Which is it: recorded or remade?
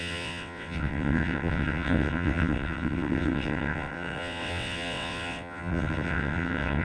remade